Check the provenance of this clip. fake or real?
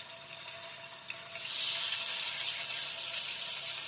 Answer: real